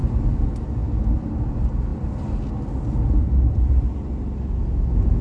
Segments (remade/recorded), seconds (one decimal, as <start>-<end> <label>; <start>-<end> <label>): 0.0-1.5 remade; 1.5-5.2 recorded